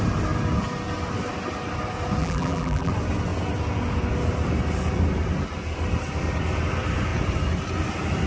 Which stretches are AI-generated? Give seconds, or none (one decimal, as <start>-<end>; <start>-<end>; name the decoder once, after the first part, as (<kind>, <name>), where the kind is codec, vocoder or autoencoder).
2.2-2.9 (vocoder, BigVGAN v2)